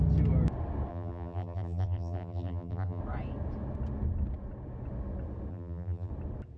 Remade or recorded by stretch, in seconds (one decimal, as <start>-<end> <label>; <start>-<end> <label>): 0.0-0.9 recorded; 0.9-3.0 remade; 3.0-5.5 recorded; 5.5-6.1 remade; 6.1-6.6 recorded